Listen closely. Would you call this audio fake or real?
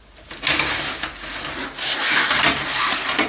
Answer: real